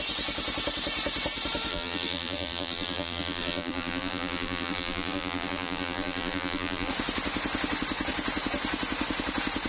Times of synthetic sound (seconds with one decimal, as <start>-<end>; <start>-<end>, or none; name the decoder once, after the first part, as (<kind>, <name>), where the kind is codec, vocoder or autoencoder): 1.7-6.9 (vocoder, BigVGAN v2)